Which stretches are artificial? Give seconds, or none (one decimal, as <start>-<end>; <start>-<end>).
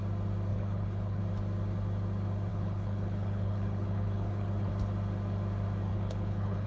0.5-1.2; 2.5-4.7; 5.9-6.7